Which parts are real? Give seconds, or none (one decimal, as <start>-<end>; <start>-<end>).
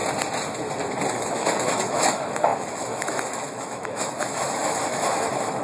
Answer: 0.0-1.1